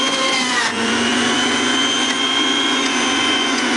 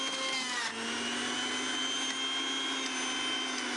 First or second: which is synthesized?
first